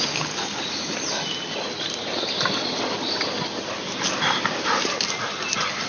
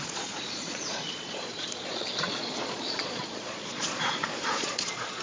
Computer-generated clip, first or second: second